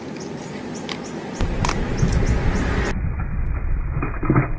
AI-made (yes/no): no